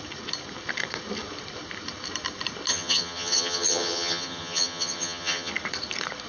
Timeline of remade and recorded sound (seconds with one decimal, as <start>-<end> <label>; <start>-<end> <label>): 0.0-2.7 recorded; 2.7-5.5 remade; 5.5-6.3 recorded